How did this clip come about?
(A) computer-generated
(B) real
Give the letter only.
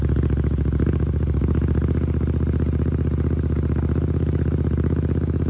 B